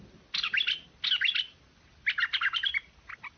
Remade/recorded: recorded